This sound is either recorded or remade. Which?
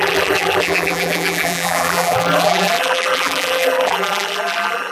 remade